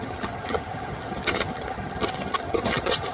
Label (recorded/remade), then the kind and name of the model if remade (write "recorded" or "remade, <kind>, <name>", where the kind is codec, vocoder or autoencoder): remade, vocoder, HiFi-GAN